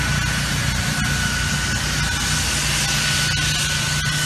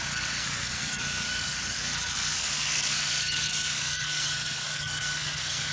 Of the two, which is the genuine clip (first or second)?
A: first